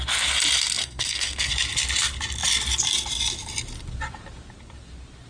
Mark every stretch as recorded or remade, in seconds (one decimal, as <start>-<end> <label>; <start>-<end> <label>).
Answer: 0.0-0.8 recorded; 0.8-1.5 remade; 1.5-5.3 recorded